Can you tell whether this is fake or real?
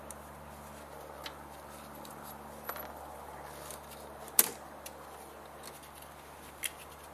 real